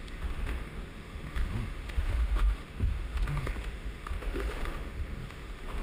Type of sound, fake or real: fake